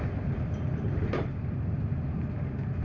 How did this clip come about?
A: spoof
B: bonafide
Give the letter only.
B